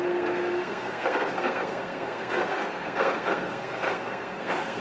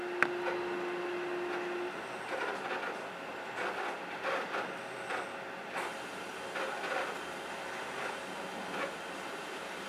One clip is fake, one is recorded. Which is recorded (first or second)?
second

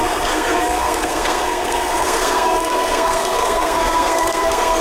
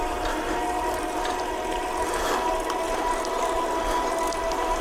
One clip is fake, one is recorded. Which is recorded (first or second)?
second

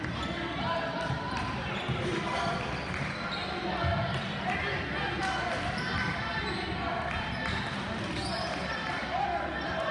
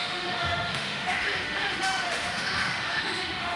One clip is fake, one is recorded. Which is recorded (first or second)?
first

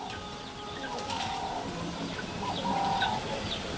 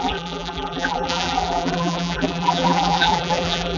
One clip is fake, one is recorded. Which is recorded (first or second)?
first